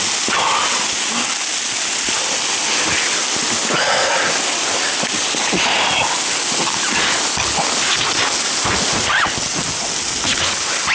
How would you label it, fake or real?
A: real